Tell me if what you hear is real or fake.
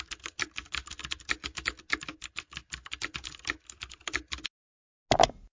real